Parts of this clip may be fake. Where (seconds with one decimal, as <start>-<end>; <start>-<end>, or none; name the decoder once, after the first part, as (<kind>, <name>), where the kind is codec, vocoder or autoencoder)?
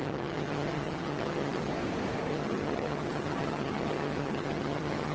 0.0-1.7 (vocoder, HiFi-GAN); 2.3-5.1